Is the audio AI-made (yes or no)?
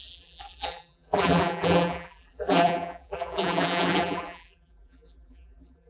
yes